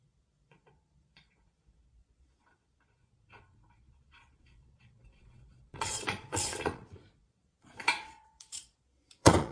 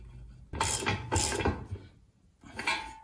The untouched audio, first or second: second